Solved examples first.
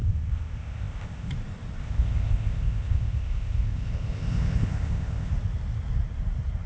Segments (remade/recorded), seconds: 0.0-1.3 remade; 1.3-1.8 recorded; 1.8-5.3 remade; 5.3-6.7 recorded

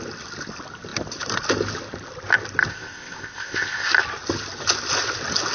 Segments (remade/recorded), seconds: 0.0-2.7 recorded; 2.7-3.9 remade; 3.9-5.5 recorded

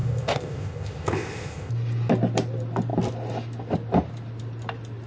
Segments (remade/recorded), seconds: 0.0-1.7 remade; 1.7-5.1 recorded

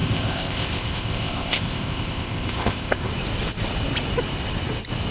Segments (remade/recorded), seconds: 0.0-3.1 remade; 3.1-5.1 recorded

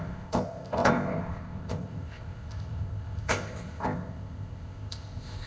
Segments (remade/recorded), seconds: 0.0-5.5 remade

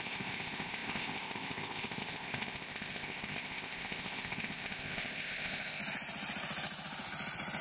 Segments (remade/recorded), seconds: 0.0-5.8 remade; 5.8-7.6 recorded

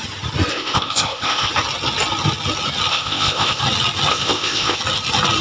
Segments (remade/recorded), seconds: 0.0-0.5 recorded; 0.5-1.5 remade; 1.5-2.9 recorded; 2.9-3.6 remade; 3.6-4.1 recorded; 4.1-4.8 remade; 4.8-5.4 recorded